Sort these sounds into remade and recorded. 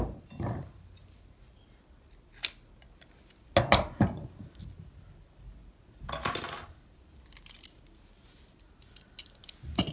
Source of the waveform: recorded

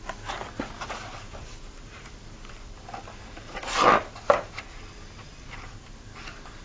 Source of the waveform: remade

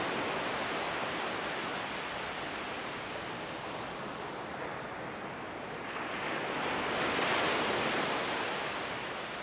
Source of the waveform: recorded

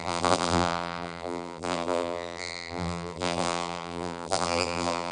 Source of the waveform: remade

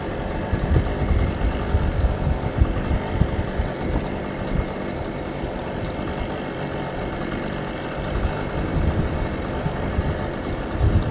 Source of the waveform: recorded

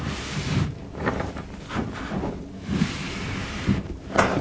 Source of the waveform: remade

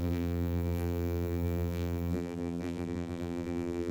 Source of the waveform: remade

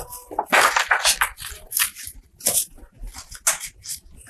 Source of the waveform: recorded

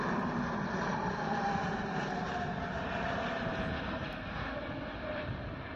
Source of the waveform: remade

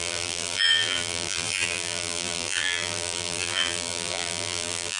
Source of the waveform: remade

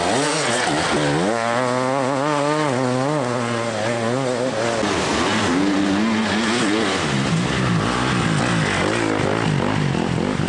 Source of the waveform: recorded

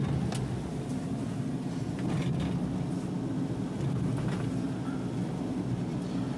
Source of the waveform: recorded